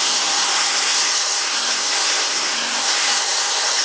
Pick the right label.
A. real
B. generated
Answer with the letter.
B